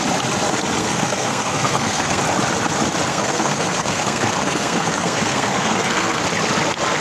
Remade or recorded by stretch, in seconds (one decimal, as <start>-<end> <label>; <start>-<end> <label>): 0.0-0.8 recorded; 0.8-2.2 remade; 2.2-3.1 recorded; 3.1-6.2 remade; 6.2-7.0 recorded